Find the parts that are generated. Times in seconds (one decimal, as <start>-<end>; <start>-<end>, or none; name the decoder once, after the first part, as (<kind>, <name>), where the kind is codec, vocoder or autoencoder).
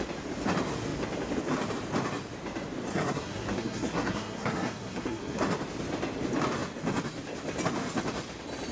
2.9-5.4 (codec, SNAC)